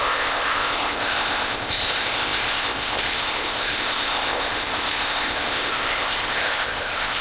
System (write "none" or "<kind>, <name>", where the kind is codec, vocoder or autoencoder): codec, ZipCodec